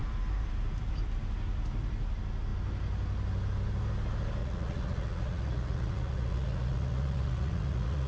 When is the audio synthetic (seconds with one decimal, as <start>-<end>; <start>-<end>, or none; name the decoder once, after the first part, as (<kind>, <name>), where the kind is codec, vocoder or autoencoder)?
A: 4.4-8.1 (vocoder, Vocos)